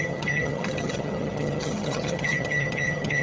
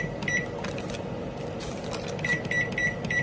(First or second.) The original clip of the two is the second